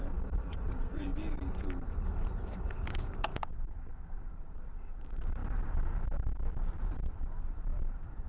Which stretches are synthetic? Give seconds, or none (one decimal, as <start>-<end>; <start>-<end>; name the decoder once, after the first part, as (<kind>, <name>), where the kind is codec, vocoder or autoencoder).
0.0-1.1 (vocoder, BigVGAN v2); 2.0-3.3; 4.2-5.4; 7.4-8.3